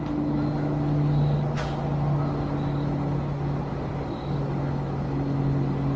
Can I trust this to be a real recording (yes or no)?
yes